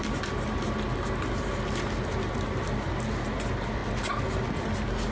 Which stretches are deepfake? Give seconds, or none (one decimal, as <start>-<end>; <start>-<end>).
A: none